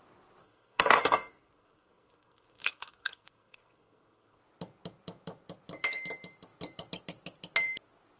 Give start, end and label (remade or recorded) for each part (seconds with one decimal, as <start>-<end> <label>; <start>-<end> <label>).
0.0-0.4 recorded; 0.4-4.4 remade; 4.4-8.2 recorded